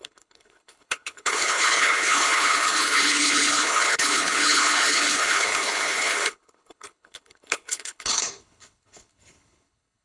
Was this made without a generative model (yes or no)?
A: no